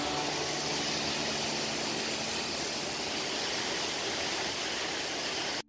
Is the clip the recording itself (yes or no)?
yes